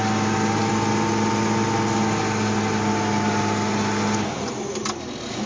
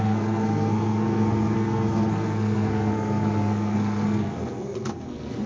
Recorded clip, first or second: first